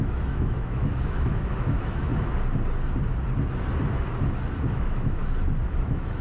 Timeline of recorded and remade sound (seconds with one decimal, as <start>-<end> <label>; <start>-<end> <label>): 0.0-2.1 remade; 2.1-4.7 recorded; 4.7-5.2 remade; 5.2-5.7 recorded; 5.7-6.2 remade